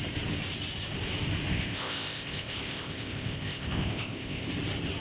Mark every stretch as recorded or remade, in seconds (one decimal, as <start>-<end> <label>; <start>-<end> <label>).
0.0-1.5 recorded; 1.5-4.5 remade; 4.5-5.0 recorded